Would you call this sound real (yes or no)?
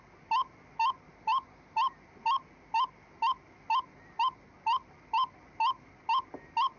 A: yes